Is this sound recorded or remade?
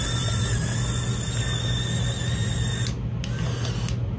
recorded